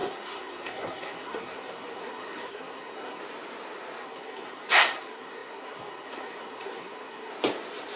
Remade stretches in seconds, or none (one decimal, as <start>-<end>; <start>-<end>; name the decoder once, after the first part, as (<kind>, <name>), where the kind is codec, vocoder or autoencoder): 0.0-3.2 (codec, SNAC); 4.0-7.3